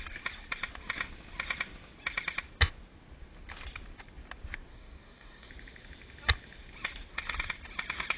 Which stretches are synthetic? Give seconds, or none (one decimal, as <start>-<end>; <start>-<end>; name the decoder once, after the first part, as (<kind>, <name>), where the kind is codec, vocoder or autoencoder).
4.7-5.5 (codec, DAC)